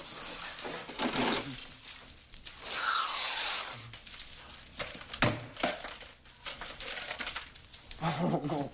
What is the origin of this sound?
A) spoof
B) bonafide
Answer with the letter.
B